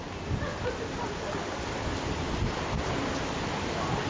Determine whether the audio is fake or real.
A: real